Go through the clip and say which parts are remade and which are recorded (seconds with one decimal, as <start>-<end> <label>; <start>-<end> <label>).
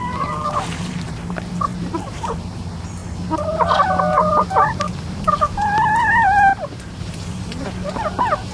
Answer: 0.0-1.7 recorded; 1.7-2.4 remade; 2.4-6.5 recorded; 6.5-7.0 remade; 7.0-8.5 recorded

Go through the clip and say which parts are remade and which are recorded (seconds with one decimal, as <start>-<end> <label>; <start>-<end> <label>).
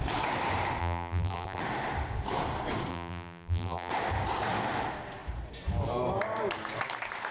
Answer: 0.0-0.8 recorded; 0.8-1.6 remade; 1.6-2.9 recorded; 2.9-3.9 remade; 3.9-7.3 recorded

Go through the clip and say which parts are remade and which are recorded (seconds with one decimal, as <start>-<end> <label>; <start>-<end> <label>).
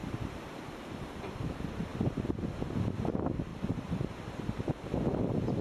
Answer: 0.0-1.4 remade; 1.4-3.5 recorded; 3.5-4.2 remade; 4.2-5.6 recorded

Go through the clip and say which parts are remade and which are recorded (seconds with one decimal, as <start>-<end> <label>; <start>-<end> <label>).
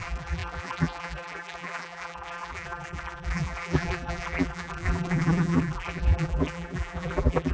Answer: 0.0-7.5 remade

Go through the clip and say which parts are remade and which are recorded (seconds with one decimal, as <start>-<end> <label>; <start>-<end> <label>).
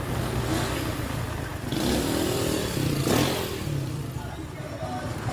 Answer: 0.0-5.3 recorded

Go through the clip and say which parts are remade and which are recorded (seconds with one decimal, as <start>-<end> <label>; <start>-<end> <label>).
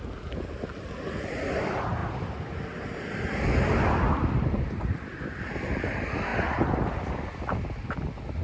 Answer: 0.0-8.4 recorded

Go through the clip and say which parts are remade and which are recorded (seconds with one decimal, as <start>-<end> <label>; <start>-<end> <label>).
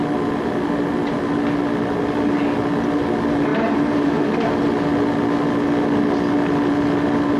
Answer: 0.0-3.5 recorded; 3.5-4.1 remade; 4.1-7.4 recorded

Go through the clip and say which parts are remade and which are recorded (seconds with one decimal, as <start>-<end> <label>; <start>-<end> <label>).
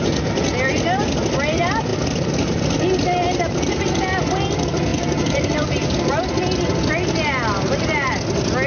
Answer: 0.0-4.9 recorded; 4.9-6.1 remade; 6.1-8.7 recorded